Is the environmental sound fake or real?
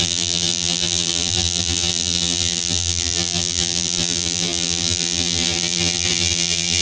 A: fake